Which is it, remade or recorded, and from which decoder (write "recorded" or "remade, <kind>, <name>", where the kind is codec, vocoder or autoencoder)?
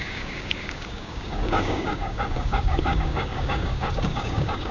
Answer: remade, codec, DAC